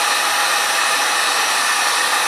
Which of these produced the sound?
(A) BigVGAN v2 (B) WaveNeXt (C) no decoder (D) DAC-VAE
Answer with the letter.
C